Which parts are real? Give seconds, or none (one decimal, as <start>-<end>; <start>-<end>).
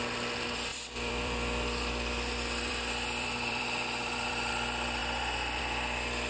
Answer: 0.0-0.7; 4.5-6.3